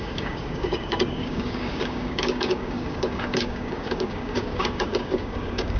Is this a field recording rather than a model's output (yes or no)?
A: no